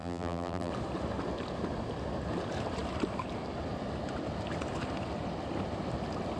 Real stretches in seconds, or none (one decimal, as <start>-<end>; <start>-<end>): 0.7-6.4